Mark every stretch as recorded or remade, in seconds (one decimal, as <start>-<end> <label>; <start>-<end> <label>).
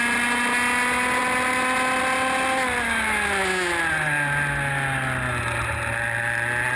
0.0-6.8 recorded